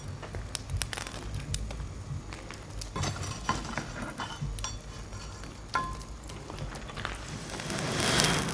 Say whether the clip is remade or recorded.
recorded